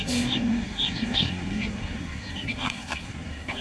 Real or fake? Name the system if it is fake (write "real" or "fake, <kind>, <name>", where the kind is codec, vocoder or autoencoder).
fake, codec, SNAC